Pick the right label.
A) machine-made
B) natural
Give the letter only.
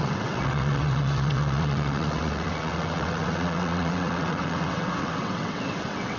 A